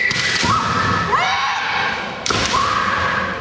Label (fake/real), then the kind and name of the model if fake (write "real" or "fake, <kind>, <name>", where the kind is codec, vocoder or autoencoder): fake, vocoder, BigVGAN v2